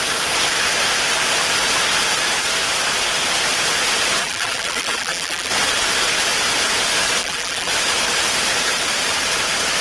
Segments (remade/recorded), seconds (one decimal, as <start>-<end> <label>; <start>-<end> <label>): 0.0-4.2 recorded; 4.2-5.5 remade; 5.5-7.2 recorded; 7.2-7.7 remade; 7.7-9.8 recorded